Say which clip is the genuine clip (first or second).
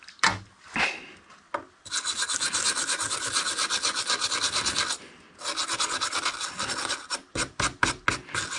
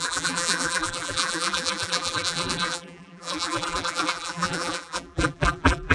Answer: first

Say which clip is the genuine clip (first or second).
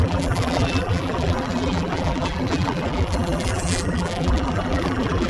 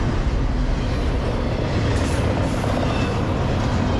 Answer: second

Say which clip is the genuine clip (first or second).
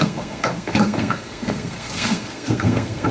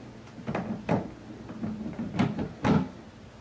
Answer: second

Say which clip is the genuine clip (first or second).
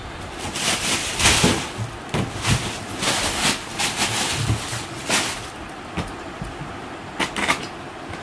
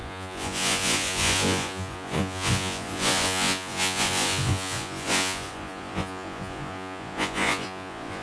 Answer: first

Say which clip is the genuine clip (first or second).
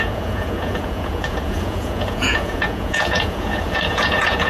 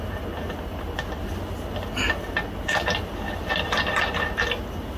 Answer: second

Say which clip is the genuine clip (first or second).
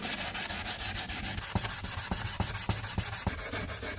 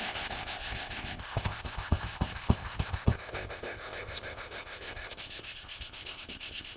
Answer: first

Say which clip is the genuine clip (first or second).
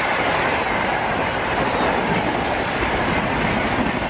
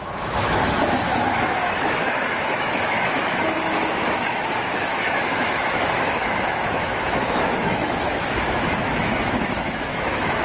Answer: first